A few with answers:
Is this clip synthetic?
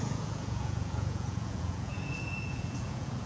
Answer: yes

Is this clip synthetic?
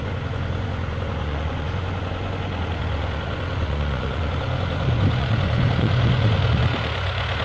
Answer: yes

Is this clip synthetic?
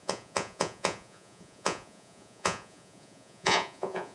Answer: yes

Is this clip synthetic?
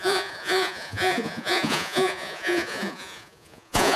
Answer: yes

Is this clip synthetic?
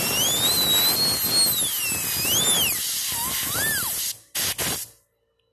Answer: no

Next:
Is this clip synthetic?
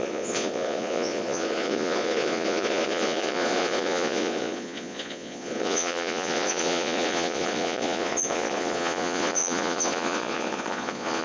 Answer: yes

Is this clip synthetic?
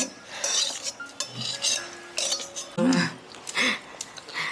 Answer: no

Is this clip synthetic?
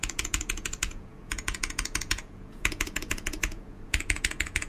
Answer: yes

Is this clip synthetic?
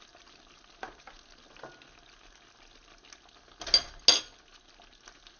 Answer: no